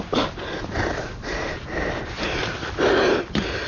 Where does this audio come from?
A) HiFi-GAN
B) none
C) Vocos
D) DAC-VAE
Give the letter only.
B